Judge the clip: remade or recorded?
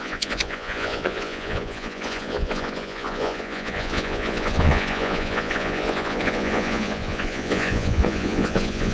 remade